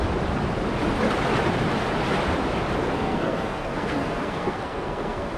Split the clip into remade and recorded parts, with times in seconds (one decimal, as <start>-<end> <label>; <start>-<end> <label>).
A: 0.0-2.8 recorded; 2.8-5.4 remade